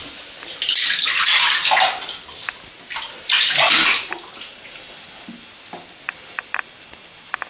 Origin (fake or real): real